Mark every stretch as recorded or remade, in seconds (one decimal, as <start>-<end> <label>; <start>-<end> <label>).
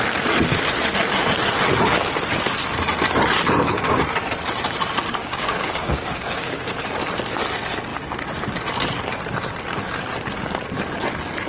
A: 0.0-5.2 recorded; 5.2-6.8 remade; 6.8-11.5 recorded